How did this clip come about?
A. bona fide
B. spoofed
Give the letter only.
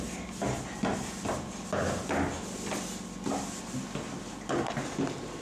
A